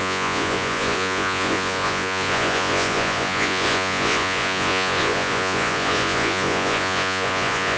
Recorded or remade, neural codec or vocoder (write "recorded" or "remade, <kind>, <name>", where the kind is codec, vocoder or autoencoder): remade, vocoder, Vocos